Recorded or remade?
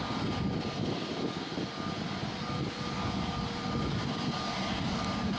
recorded